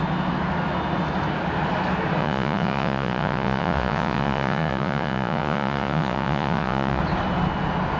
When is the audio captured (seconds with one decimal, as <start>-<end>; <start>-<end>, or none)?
0.0-2.2; 7.0-8.0